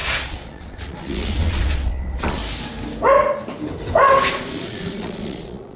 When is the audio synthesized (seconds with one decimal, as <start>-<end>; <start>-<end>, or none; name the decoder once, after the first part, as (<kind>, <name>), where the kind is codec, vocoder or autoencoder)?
0.0-2.4 (vocoder, Vocos); 4.3-5.8